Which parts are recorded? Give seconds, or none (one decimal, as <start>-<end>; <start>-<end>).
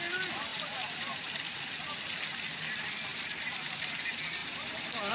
0.0-0.5; 1.3-3.1; 3.9-4.4